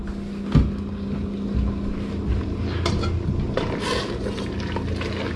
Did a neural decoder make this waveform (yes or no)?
no